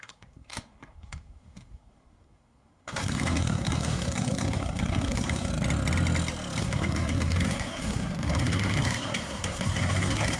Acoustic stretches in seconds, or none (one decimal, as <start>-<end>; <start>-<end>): 5.5-6.6